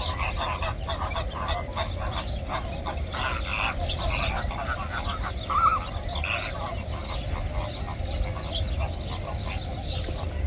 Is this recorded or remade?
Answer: recorded